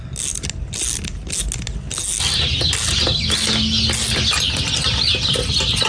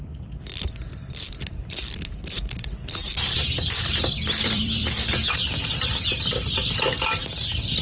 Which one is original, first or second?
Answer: first